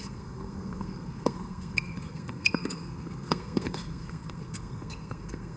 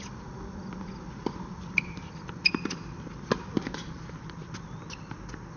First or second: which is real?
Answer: second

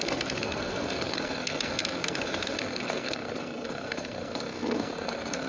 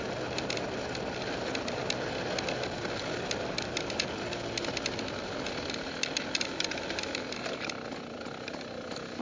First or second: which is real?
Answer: second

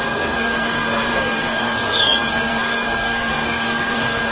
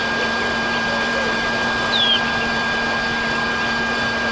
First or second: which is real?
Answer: second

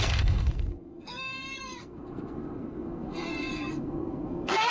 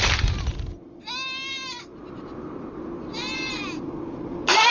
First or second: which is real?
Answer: second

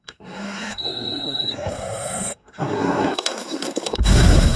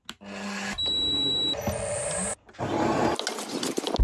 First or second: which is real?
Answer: second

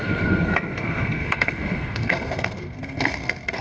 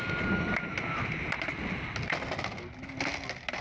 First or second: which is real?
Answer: second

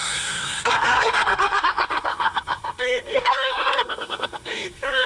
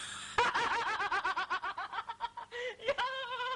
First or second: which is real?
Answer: second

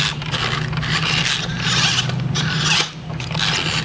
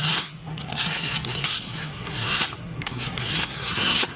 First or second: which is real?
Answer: first